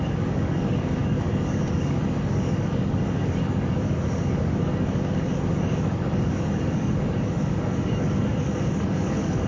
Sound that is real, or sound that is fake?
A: fake